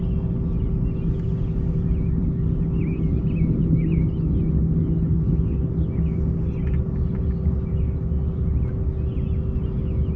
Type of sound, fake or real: real